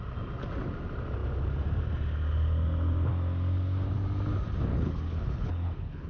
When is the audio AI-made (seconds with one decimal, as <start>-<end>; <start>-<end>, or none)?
4.7-6.1